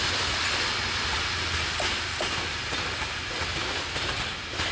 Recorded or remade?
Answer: recorded